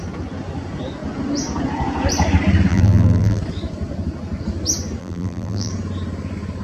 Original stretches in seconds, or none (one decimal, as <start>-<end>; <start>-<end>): 0.0-2.7; 3.4-5.0; 5.7-6.6